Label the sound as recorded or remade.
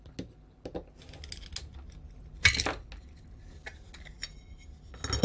recorded